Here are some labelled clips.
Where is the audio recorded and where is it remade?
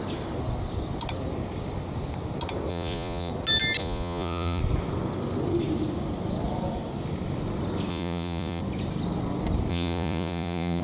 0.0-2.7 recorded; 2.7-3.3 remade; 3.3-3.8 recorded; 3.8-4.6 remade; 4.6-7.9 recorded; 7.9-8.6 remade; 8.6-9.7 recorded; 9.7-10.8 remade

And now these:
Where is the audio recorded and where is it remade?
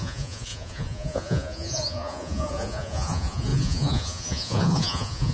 0.0-5.3 remade